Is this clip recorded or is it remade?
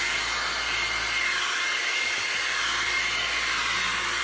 recorded